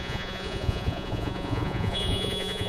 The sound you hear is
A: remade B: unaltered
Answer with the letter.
A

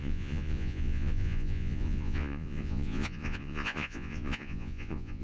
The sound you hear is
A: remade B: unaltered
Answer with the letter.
A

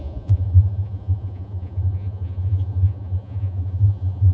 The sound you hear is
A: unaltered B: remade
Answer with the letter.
B